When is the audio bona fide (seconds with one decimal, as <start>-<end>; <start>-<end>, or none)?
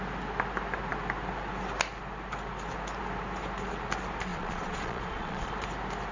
0.0-4.3; 5.5-6.1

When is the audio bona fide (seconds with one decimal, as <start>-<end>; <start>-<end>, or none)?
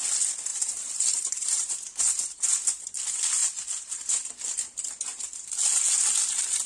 0.0-0.5; 1.7-5.1; 5.7-6.7